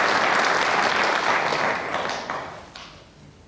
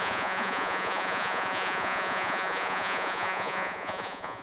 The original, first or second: first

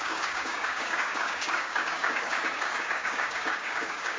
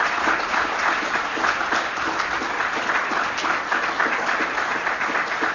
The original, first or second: second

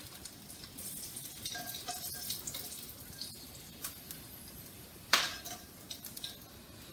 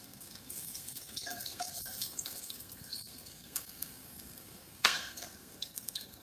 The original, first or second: first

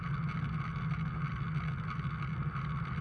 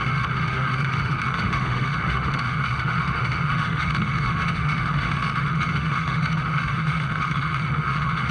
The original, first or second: first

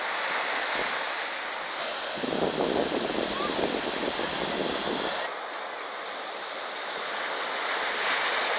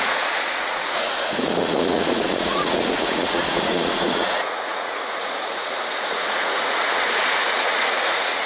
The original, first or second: first